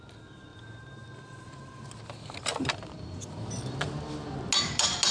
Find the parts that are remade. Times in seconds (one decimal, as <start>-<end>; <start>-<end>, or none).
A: none